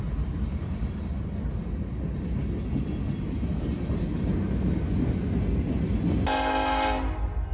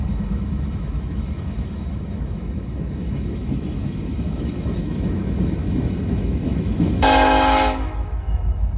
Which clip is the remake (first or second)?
second